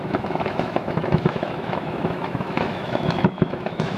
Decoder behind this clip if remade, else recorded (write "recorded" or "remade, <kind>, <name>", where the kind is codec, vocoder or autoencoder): remade, autoencoder, DAC-VAE